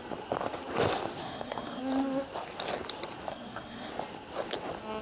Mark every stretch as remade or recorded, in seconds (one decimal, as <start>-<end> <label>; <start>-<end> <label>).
0.0-1.2 recorded; 1.2-1.8 remade; 1.8-3.3 recorded; 3.3-3.9 remade; 3.9-5.0 recorded